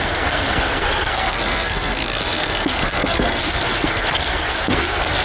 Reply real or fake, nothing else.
fake